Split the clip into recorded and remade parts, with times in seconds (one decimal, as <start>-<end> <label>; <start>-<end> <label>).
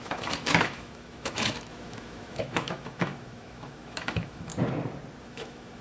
0.0-4.5 remade; 4.5-5.2 recorded; 5.2-5.8 remade